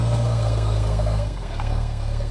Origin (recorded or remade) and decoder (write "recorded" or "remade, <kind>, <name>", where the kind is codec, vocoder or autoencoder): remade, codec, SNAC